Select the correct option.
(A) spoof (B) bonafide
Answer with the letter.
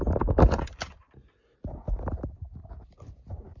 B